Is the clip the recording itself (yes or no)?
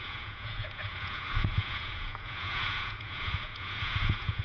no